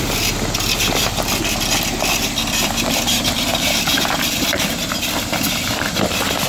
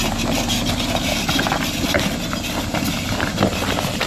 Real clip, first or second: second